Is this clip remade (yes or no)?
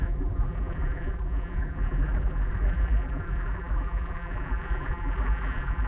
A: yes